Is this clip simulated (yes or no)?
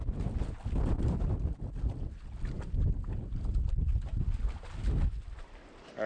no